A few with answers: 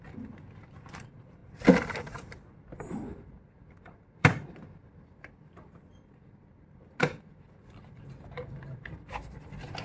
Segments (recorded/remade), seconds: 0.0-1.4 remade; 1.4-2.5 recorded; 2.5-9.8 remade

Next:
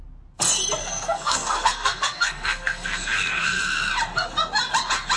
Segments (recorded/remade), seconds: 0.0-0.8 recorded; 0.8-3.9 remade; 3.9-5.2 recorded

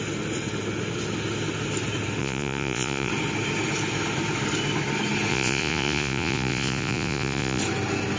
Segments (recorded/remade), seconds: 0.0-2.2 recorded; 2.2-3.1 remade; 3.1-5.3 recorded; 5.3-7.6 remade; 7.6-8.2 recorded

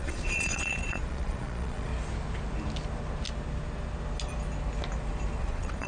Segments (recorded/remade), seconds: 0.0-1.9 remade; 1.9-5.4 recorded; 5.4-5.9 remade